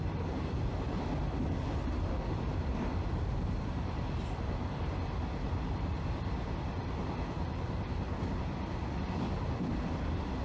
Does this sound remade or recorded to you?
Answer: recorded